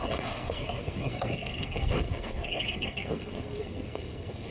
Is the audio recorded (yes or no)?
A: no